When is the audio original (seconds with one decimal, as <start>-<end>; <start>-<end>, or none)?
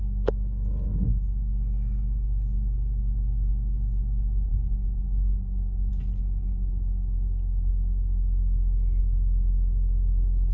0.0-10.5